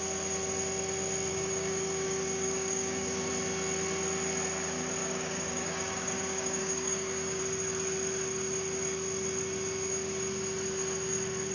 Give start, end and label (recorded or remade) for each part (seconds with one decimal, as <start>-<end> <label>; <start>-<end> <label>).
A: 0.0-1.3 recorded; 1.3-3.3 remade; 3.3-5.0 recorded; 5.0-7.4 remade; 7.4-11.5 recorded